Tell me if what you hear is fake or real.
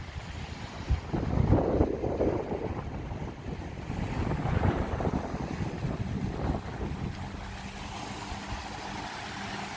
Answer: real